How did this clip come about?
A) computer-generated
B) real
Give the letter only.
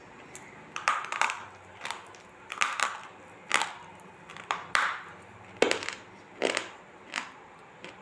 A